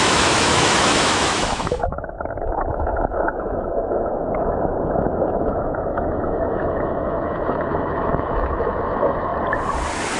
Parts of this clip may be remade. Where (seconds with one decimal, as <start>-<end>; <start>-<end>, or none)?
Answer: 0.0-9.3